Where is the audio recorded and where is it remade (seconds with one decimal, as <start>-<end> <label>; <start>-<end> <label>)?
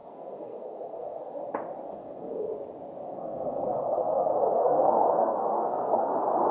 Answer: 0.0-1.4 remade; 1.4-1.9 recorded; 1.9-2.5 remade; 2.5-3.1 recorded; 3.1-6.1 remade; 6.1-6.5 recorded